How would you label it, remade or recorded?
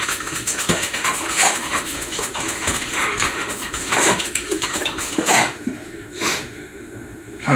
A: remade